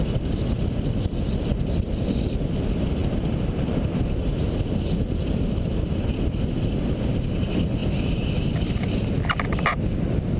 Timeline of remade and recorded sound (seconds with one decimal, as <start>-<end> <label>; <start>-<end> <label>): 0.0-10.4 recorded